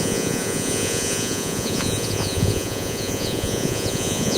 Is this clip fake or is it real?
fake